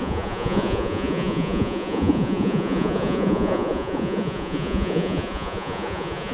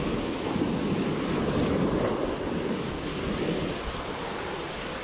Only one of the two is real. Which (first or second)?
second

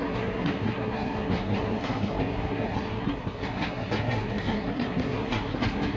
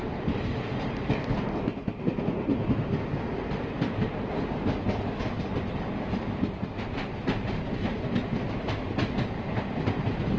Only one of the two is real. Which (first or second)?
second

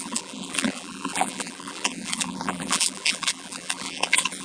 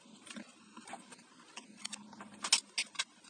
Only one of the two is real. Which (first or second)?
second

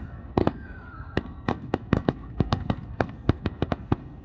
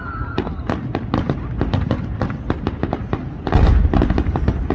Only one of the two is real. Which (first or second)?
second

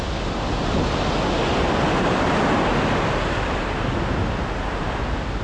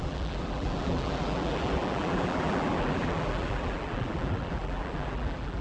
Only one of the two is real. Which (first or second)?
first